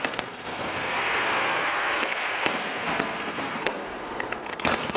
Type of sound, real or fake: fake